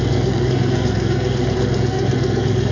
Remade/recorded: remade